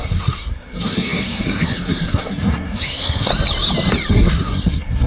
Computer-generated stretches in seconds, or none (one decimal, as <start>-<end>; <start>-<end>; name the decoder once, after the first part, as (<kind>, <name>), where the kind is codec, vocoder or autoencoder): 0.0-3.3 (codec, SNAC); 4.1-5.1